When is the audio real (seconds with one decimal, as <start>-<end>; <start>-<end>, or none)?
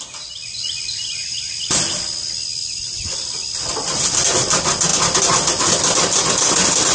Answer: 0.0-6.9